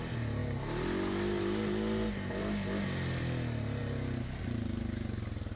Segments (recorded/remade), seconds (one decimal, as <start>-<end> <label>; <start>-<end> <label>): 0.0-5.6 recorded